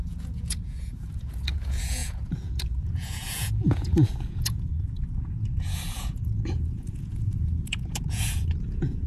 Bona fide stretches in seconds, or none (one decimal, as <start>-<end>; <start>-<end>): none

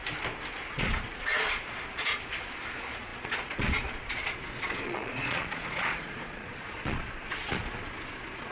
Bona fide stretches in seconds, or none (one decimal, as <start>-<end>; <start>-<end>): 0.0-0.5

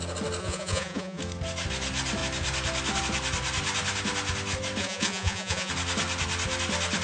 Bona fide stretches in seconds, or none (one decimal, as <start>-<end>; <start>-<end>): 0.0-0.4; 1.2-4.8; 5.7-7.0

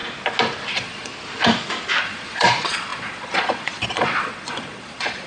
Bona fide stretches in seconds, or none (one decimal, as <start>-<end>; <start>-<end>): 0.0-0.7; 1.1-2.0

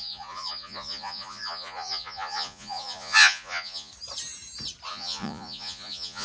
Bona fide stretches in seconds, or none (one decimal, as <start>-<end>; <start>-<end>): 3.9-4.9

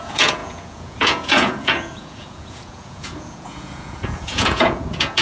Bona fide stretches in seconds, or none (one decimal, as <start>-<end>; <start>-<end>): none